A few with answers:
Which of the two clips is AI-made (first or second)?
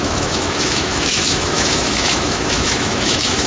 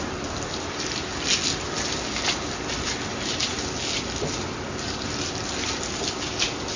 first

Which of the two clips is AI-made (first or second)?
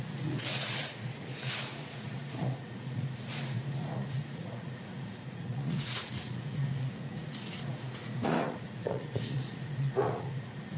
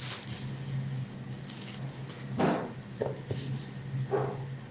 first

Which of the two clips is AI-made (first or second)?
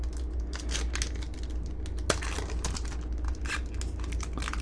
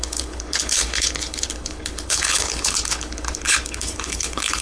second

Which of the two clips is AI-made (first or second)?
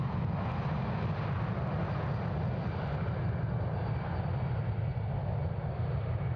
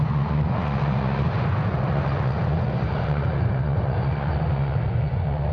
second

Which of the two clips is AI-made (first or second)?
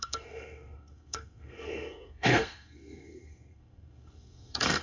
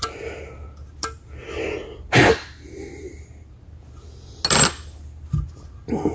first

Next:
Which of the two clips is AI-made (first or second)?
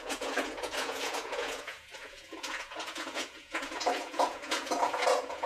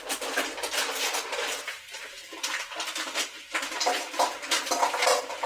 first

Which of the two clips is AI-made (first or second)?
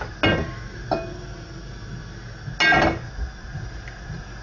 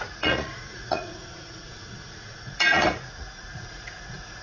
second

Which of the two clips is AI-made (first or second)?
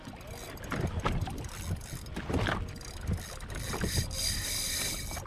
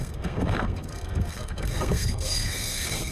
second